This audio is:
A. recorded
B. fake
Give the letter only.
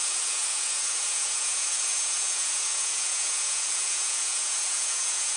B